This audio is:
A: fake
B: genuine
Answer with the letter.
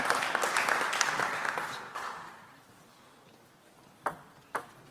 B